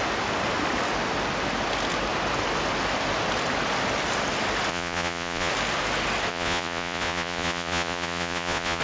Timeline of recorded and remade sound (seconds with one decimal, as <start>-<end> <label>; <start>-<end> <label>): 0.0-4.7 recorded; 4.7-5.5 remade; 5.5-6.3 recorded; 6.3-8.8 remade